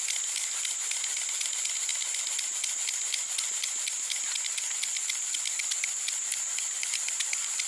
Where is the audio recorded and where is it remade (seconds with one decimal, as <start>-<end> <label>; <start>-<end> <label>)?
0.0-7.7 recorded